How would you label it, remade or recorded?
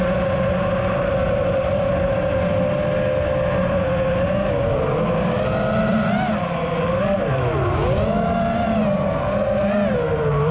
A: recorded